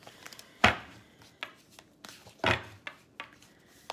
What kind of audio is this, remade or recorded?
recorded